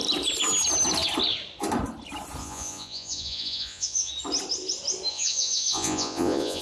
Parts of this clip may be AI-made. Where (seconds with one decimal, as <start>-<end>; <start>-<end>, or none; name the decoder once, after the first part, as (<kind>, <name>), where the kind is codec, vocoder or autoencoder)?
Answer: 2.4-4.1 (vocoder, Vocos); 5.1-6.6